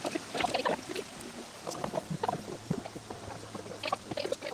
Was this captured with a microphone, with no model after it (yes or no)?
yes